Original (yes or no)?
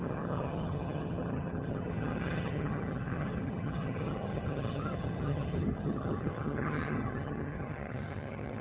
no